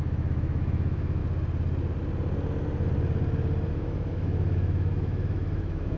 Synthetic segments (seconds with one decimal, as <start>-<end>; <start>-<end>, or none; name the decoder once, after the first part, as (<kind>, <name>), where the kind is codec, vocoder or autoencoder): 0.0-1.2 (autoencoder, DAC-VAE); 3.7-6.0